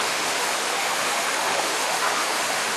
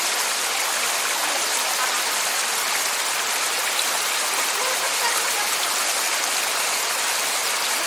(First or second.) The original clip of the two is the second